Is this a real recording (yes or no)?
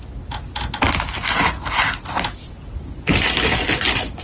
yes